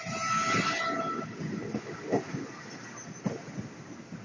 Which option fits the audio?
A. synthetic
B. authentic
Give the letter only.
B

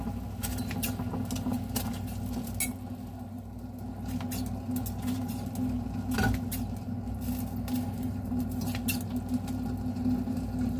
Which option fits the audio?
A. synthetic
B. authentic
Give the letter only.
B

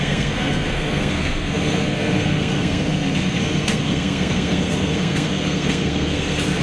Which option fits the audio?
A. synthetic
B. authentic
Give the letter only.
A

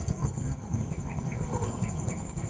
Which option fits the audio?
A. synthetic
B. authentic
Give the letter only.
A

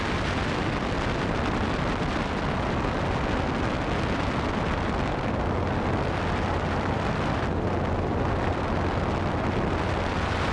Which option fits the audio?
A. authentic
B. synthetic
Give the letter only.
A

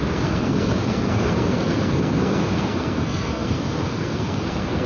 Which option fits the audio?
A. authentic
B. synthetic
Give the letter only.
B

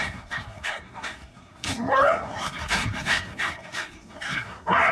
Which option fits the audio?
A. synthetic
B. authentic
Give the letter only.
A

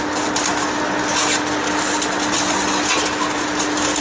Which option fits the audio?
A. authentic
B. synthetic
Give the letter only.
A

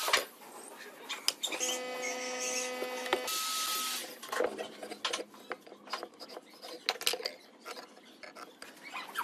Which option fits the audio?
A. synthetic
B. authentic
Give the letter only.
B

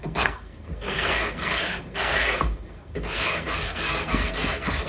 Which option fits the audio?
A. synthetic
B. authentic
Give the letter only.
A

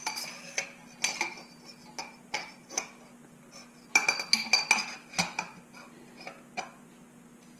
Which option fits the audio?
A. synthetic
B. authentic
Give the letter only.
B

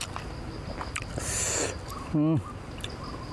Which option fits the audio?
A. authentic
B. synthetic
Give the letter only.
A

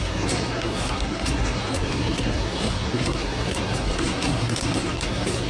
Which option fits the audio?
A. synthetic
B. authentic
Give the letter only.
A